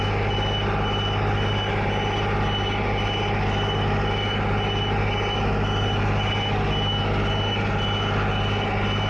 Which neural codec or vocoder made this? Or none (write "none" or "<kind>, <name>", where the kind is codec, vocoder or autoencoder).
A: none